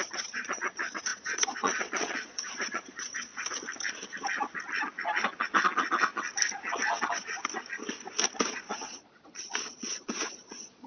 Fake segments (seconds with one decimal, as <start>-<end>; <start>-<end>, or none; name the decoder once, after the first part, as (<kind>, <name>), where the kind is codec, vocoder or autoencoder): 0.0-3.3 (vocoder, Vocos); 8.5-10.9